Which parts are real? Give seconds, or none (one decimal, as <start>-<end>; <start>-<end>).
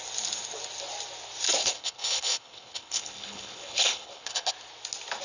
0.0-1.6; 4.5-5.2